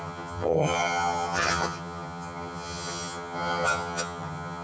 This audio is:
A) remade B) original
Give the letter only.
A